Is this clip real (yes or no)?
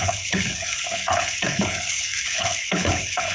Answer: no